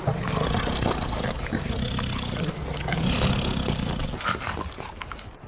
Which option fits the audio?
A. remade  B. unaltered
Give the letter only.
B